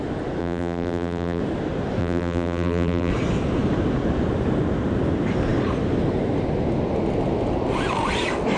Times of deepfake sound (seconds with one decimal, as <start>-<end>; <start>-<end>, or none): 0.4-1.4; 2.0-3.1